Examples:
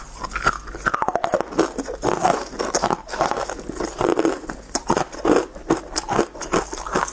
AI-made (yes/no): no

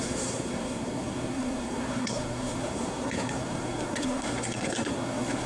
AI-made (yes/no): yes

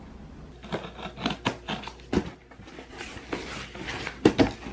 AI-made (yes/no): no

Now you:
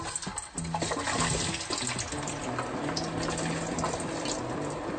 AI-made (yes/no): no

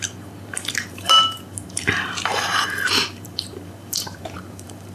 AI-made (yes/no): yes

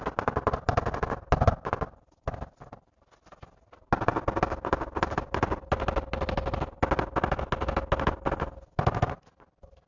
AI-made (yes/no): no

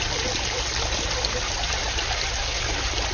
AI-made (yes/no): no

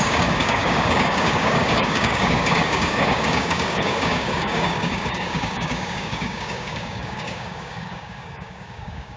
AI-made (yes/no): yes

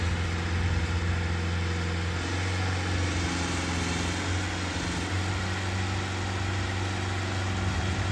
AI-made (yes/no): no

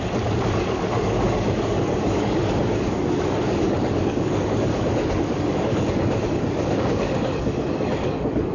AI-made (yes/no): yes